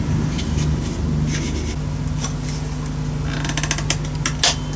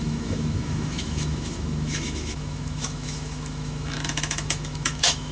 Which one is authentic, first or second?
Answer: first